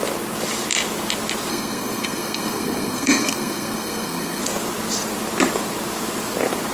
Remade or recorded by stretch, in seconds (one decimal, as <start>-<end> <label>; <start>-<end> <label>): 0.0-1.5 recorded; 1.5-4.4 remade; 4.4-6.7 recorded